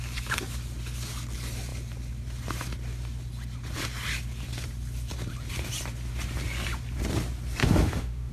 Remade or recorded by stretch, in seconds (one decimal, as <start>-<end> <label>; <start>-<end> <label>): 0.0-7.6 recorded; 7.6-8.3 remade